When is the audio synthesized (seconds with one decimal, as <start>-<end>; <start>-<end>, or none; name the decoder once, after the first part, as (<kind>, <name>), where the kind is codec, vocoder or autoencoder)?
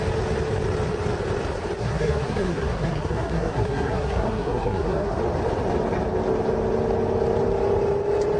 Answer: 1.8-5.2 (codec, SNAC)